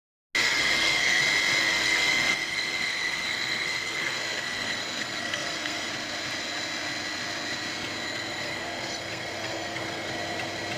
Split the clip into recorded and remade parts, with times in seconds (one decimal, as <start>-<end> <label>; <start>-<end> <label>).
0.0-0.4 recorded; 0.4-1.2 remade; 1.2-1.6 recorded; 1.6-5.9 remade; 5.9-8.3 recorded; 8.3-10.1 remade; 10.1-10.8 recorded